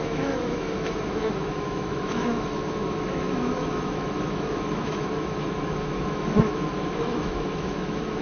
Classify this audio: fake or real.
fake